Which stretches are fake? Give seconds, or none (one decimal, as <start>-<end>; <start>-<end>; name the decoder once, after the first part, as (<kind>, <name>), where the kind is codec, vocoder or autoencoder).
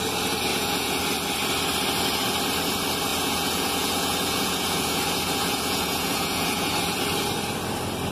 0.5-1.0 (vocoder, Vocos); 3.1-6.7